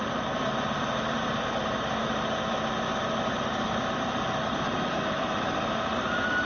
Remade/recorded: remade